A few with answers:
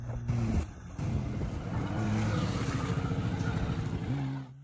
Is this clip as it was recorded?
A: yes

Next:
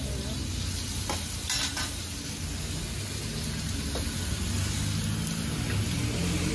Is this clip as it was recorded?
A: yes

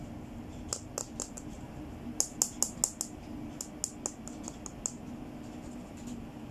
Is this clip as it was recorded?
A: yes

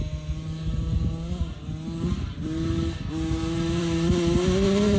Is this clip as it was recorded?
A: yes